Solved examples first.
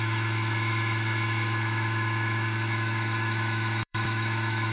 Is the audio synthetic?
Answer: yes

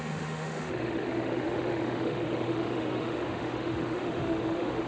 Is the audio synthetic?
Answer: yes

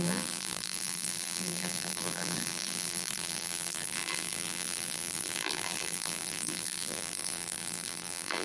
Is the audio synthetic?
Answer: yes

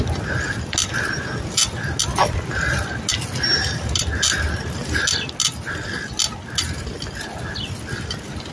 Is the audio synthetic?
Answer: no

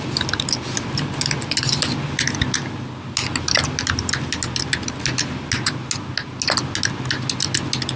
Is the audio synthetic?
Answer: no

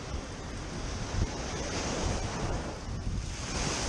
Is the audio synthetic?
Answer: no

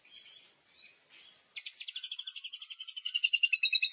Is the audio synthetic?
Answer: no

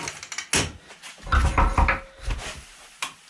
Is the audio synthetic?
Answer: no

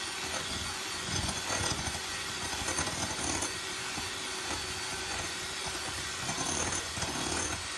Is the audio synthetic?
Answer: yes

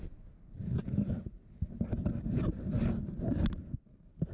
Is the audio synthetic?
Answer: no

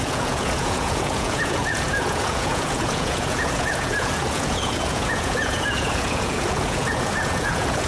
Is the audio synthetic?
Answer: yes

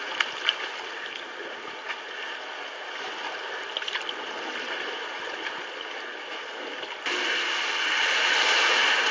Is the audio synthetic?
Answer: no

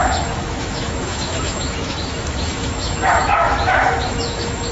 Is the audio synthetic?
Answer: yes